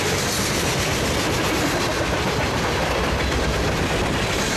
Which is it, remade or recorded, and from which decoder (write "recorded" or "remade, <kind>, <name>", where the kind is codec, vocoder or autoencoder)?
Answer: recorded